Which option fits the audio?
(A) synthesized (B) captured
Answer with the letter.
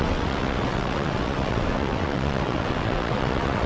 A